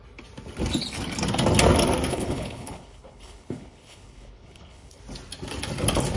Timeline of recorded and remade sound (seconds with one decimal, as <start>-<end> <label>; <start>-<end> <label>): 0.0-2.1 recorded; 2.1-5.0 remade; 5.0-6.2 recorded